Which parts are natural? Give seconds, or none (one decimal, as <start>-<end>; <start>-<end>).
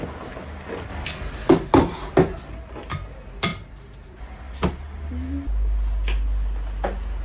0.0-3.5; 4.2-7.2